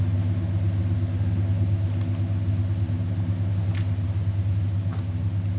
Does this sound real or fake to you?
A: real